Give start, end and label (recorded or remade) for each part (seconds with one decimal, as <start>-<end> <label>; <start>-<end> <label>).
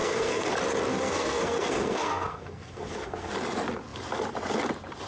0.0-0.5 remade; 0.5-0.9 recorded; 0.9-3.3 remade; 3.3-5.1 recorded